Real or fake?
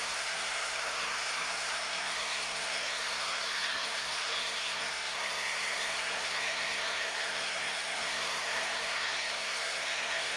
fake